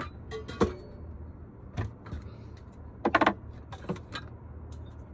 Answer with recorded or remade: recorded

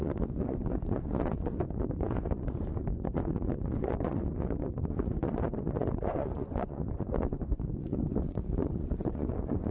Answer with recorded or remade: remade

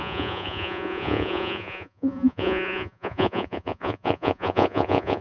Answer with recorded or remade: remade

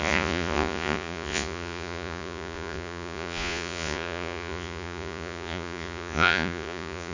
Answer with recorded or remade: remade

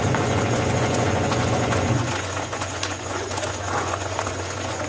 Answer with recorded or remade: remade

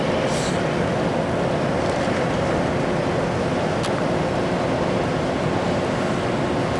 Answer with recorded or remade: recorded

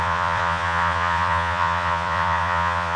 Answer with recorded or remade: remade